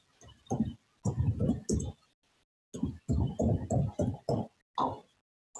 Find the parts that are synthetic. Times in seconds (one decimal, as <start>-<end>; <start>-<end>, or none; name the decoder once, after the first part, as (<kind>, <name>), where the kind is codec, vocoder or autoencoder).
none